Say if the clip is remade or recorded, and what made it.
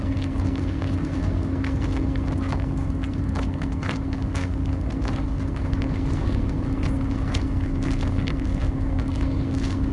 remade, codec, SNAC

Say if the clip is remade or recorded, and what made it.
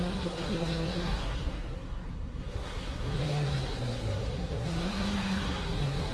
remade, codec, SNAC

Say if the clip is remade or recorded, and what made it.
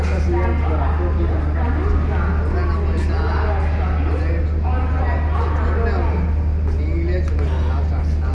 recorded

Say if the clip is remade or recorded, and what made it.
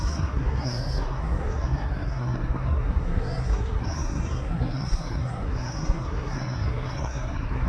remade, codec, SNAC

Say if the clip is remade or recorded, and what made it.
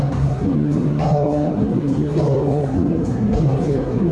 remade, codec, SNAC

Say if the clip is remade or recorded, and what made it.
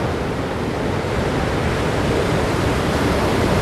recorded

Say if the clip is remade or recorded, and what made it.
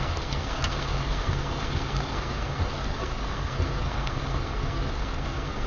remade, codec, SNAC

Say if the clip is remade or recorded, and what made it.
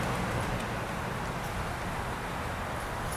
recorded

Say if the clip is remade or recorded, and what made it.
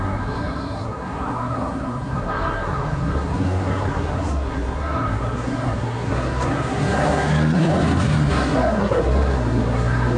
remade, codec, SNAC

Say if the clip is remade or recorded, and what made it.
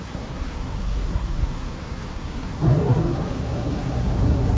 remade, codec, SNAC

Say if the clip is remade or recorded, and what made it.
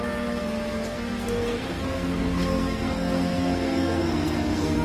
remade, codec, SNAC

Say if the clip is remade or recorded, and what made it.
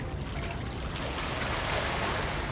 recorded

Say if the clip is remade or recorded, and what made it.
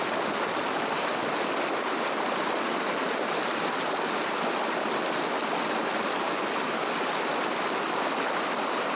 recorded